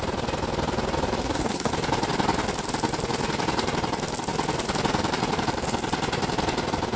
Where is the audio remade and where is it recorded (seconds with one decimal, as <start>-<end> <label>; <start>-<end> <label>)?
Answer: 0.0-1.2 recorded; 1.2-1.7 remade; 1.7-7.0 recorded